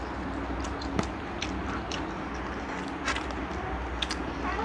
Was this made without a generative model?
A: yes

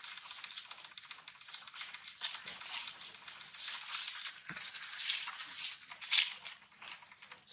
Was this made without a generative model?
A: yes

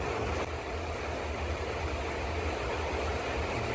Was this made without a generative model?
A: yes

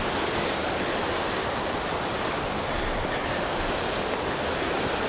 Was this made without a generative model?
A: yes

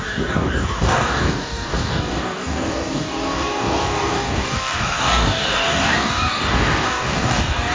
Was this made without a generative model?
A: no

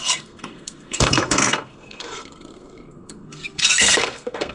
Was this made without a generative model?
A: no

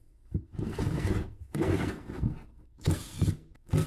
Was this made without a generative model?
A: no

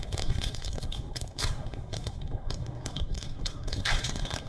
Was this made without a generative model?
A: no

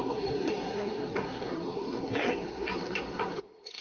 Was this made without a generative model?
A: no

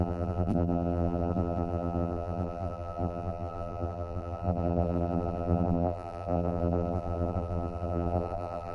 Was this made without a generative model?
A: no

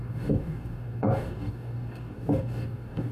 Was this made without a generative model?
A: no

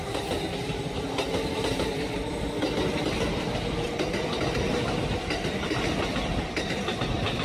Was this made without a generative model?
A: yes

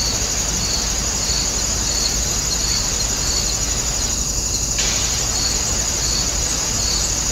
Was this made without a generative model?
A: yes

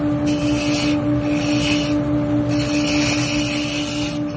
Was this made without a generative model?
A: yes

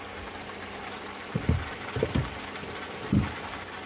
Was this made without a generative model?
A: yes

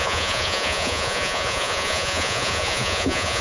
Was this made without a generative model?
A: no